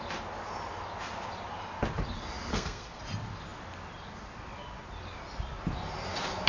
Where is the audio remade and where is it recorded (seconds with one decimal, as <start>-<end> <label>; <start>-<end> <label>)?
0.0-2.5 recorded; 2.5-3.0 remade; 3.0-6.5 recorded